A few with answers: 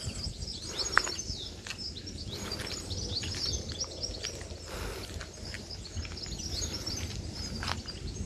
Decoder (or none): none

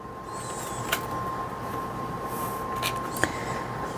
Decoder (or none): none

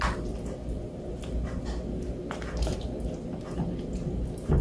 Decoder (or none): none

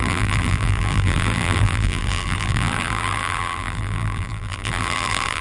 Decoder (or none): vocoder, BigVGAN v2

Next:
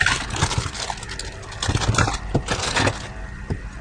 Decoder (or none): none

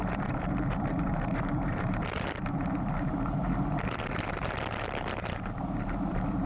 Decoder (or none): vocoder, BigVGAN v2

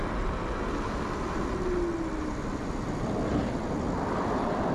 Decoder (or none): none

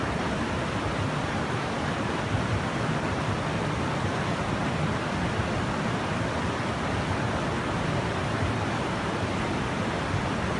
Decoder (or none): none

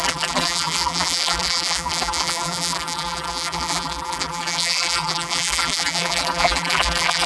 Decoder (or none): vocoder, BigVGAN v2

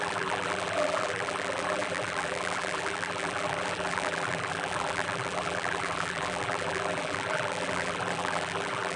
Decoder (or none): vocoder, BigVGAN v2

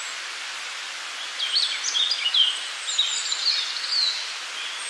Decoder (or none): none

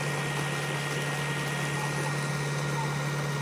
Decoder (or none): none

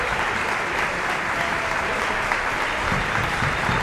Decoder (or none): vocoder, BigVGAN v2